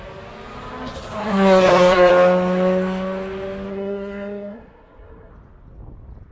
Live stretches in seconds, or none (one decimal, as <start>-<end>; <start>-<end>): 0.0-1.2; 2.1-3.7; 5.3-6.3